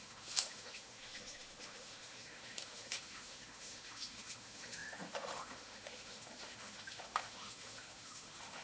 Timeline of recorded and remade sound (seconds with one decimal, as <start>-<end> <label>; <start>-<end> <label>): 0.0-8.6 remade